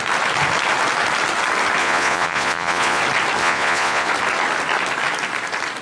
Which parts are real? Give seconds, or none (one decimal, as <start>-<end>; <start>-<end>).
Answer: 0.0-1.8; 3.0-3.4; 4.1-5.8